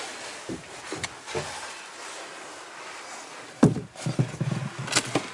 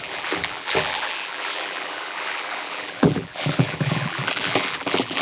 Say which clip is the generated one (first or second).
second